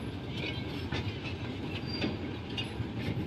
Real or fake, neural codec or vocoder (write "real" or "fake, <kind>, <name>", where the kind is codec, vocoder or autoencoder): real